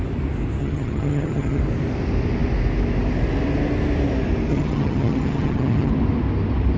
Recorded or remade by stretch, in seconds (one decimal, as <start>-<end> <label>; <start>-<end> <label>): 0.0-0.6 recorded; 0.6-1.6 remade; 1.6-4.5 recorded; 4.5-5.9 remade; 5.9-6.8 recorded